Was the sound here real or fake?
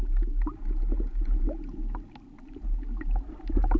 real